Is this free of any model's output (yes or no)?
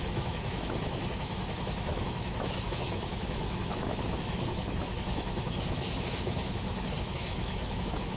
no